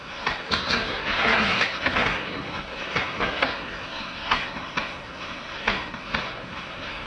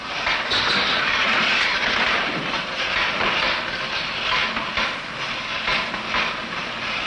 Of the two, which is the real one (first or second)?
second